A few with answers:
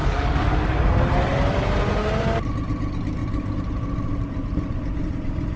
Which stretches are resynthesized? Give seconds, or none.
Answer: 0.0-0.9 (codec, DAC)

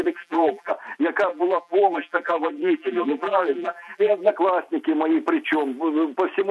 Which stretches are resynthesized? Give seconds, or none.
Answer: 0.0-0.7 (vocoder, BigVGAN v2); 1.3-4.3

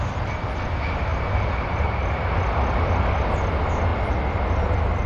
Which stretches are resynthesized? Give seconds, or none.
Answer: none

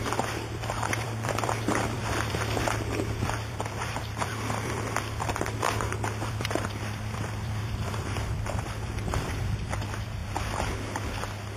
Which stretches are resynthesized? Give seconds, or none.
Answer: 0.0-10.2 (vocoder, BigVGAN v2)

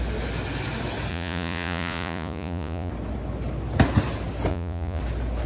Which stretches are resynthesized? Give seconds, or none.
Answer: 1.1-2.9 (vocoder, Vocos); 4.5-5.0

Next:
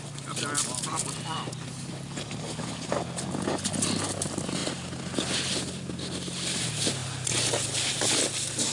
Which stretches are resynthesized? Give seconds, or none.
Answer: none

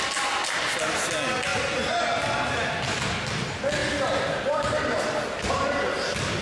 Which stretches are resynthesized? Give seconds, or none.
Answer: none

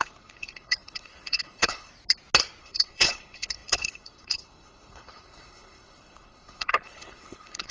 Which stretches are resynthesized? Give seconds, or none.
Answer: 0.0-1.9 (codec, HILCodec); 2.6-7.7